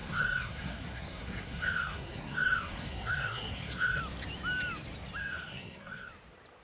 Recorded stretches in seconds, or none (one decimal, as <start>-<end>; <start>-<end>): 4.0-5.2; 6.1-6.6